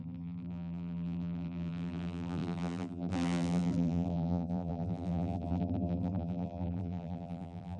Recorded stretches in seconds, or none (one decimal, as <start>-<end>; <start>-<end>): none